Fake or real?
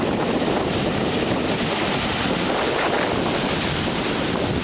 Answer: real